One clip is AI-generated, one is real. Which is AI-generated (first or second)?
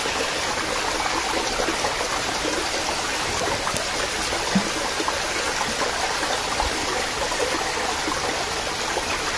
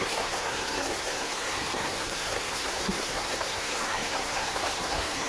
second